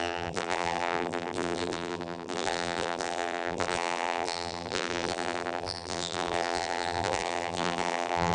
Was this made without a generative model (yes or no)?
no